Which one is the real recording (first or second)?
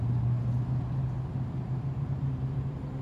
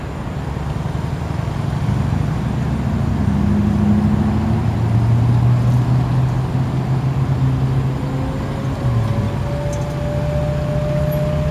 second